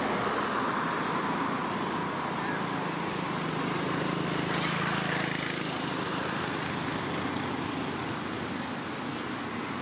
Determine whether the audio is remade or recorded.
recorded